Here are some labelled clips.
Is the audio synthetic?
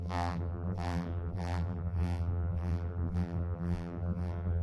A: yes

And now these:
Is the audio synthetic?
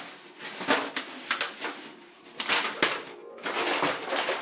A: no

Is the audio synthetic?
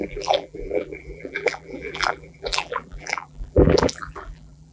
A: yes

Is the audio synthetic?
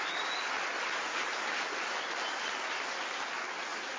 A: no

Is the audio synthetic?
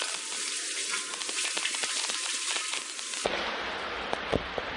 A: no